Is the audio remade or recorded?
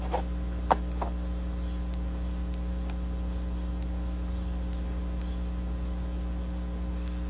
recorded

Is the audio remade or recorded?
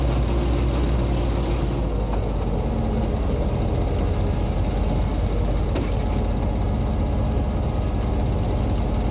recorded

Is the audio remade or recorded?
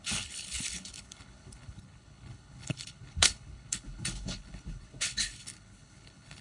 remade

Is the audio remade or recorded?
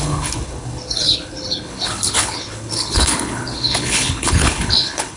remade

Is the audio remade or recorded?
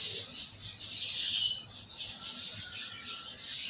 recorded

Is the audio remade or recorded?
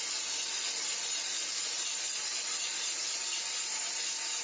recorded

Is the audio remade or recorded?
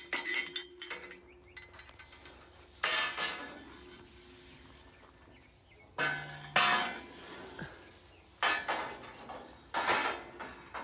recorded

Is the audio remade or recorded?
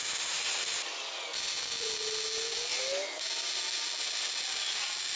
recorded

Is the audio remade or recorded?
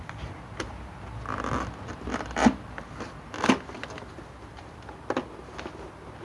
recorded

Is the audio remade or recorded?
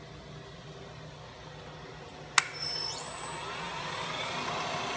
recorded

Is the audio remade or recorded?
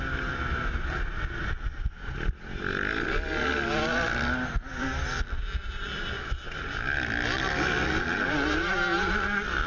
recorded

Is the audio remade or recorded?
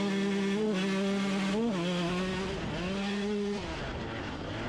recorded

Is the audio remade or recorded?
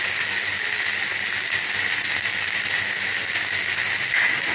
recorded